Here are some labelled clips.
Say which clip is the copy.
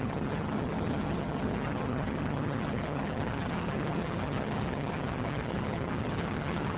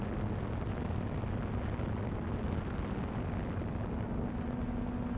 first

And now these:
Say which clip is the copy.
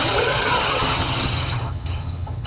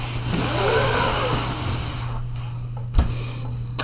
first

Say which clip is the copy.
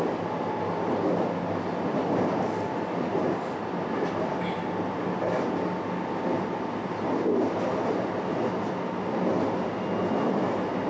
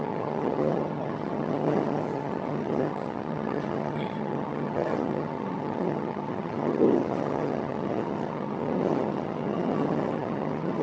second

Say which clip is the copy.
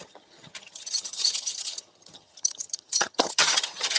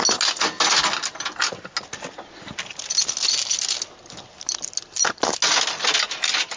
first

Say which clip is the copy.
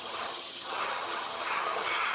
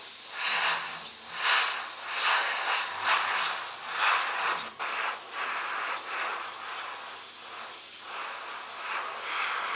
first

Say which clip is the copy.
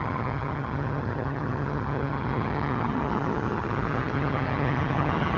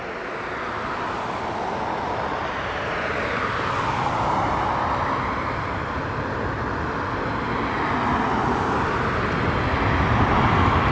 first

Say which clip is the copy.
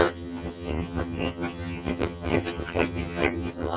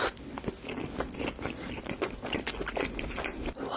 first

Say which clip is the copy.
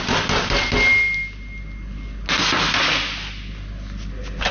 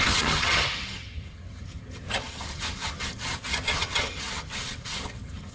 second